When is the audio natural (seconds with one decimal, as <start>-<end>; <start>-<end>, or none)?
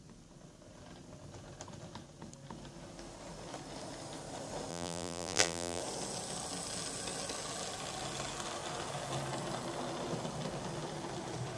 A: 0.0-4.7; 5.8-11.6